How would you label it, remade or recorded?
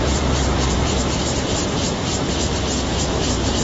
remade